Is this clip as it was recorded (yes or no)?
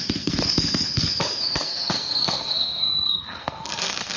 no